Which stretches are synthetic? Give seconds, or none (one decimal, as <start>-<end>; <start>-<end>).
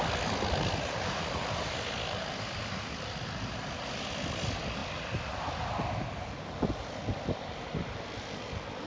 none